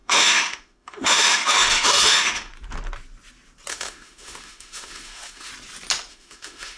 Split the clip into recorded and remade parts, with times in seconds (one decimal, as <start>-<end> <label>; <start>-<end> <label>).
0.0-2.5 remade; 2.5-3.7 recorded; 3.7-5.5 remade; 5.5-6.1 recorded; 6.1-6.8 remade